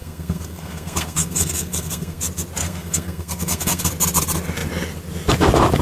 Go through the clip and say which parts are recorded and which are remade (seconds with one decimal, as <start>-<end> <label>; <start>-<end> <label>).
0.0-2.2 remade; 2.2-2.6 recorded; 2.6-3.9 remade; 3.9-5.8 recorded